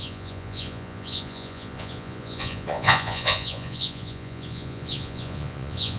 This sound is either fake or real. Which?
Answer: fake